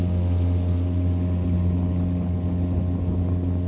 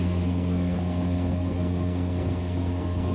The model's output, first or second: second